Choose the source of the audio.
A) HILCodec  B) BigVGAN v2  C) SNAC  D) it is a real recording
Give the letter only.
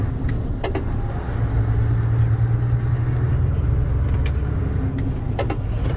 D